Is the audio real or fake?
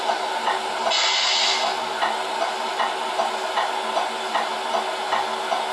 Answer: real